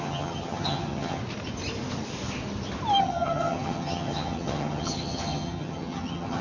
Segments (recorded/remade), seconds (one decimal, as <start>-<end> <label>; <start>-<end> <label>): 0.0-1.2 remade; 1.2-3.0 recorded; 3.0-6.4 remade